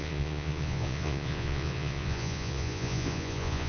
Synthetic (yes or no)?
yes